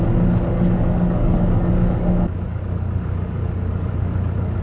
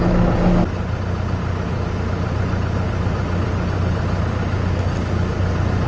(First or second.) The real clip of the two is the second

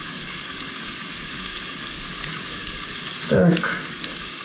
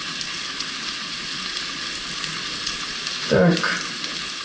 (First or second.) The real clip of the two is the second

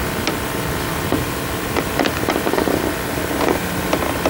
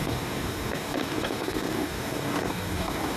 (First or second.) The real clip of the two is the first